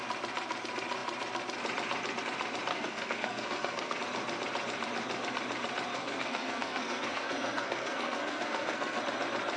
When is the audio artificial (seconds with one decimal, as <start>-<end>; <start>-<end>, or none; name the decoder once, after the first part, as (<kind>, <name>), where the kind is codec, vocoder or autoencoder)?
2.7-4.0 (codec, SNAC); 5.9-9.0